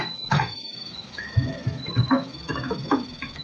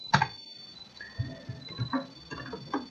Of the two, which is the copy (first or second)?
first